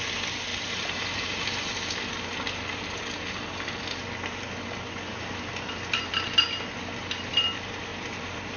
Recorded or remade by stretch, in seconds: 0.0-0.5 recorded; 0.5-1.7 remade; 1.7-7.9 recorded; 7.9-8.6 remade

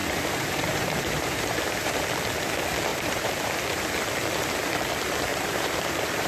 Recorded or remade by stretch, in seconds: 0.0-2.0 remade; 2.0-2.9 recorded; 2.9-3.5 remade; 3.5-5.3 recorded; 5.3-6.3 remade

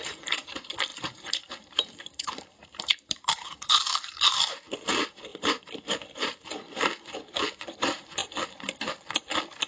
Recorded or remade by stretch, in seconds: 0.0-8.2 remade; 8.2-9.7 recorded

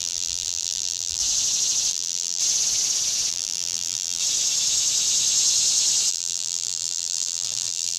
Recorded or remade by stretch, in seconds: 0.0-1.2 remade; 1.2-1.9 recorded; 1.9-2.4 remade; 2.4-3.3 recorded; 3.3-4.2 remade; 4.2-6.1 recorded; 6.1-8.0 remade

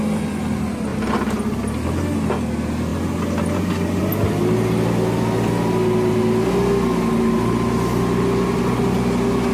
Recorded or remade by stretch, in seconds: 0.0-9.5 recorded

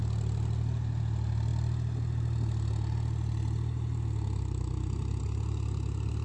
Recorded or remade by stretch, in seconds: 0.0-6.2 recorded

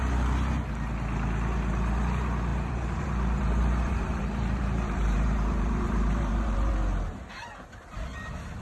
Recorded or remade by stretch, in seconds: 0.0-2.5 recorded; 2.5-6.7 remade; 6.7-8.6 recorded

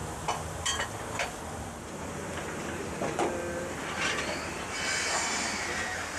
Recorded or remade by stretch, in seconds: 0.0-6.2 recorded